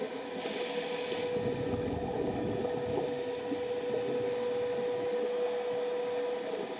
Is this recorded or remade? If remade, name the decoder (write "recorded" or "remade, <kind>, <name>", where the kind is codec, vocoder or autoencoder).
recorded